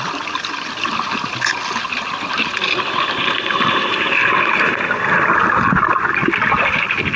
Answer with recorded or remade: recorded